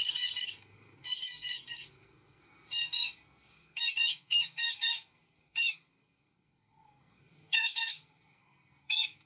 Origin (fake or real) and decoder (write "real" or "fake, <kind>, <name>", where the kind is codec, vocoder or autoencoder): fake, codec, SNAC